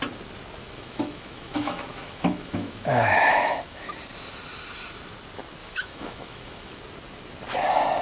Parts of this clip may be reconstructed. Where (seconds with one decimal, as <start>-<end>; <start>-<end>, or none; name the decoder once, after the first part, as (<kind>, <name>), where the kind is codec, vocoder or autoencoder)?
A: 0.6-3.9 (autoencoder, DAC-VAE); 5.6-6.8

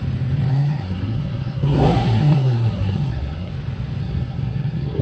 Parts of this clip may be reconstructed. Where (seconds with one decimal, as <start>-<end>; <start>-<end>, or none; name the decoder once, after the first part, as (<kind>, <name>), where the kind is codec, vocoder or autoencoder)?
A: 0.5-3.5 (codec, SNAC); 4.0-5.0